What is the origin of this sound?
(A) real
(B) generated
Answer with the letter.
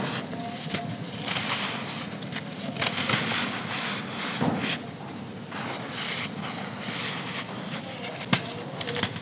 A